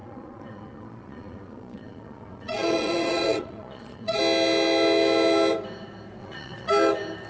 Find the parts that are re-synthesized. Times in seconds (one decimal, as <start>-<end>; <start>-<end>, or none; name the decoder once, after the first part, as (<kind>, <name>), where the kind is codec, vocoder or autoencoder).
0.0-4.2 (vocoder, Vocos); 6.2-6.7